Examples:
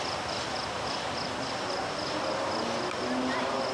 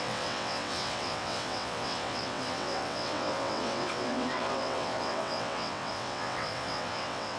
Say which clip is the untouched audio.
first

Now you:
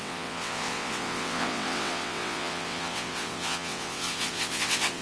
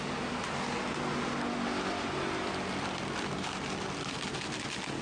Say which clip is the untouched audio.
second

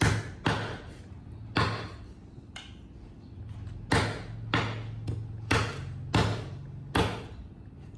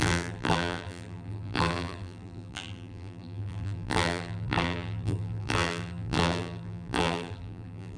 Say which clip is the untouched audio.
first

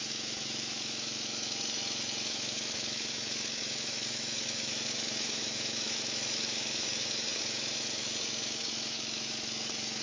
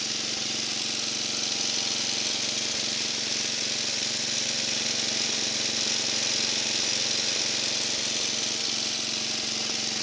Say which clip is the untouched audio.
second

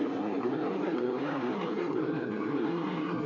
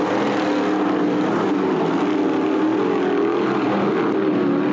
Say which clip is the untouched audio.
second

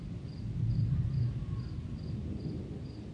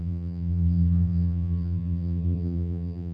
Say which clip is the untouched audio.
first